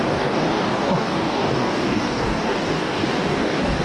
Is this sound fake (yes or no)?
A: yes